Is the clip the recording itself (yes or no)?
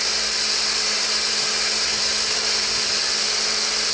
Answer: yes